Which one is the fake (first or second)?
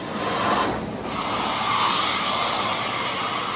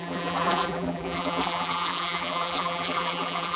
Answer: second